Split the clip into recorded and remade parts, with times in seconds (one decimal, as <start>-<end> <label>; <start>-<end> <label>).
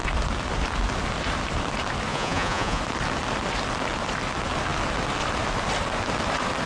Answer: 0.0-2.1 recorded; 2.1-2.8 remade; 2.8-6.7 recorded